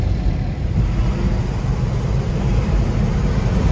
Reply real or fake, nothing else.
real